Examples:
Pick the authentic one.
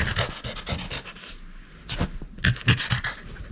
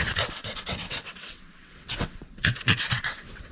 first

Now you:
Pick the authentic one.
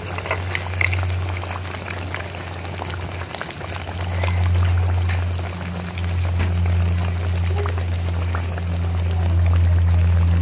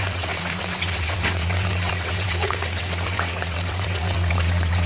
first